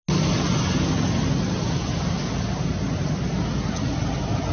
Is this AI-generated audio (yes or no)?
no